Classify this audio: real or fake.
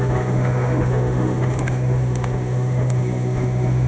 fake